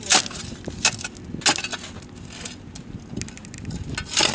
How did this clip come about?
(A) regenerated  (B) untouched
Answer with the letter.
B